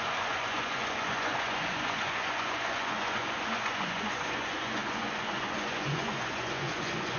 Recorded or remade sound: remade